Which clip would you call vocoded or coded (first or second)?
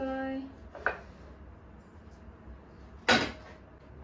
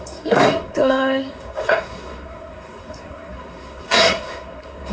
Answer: second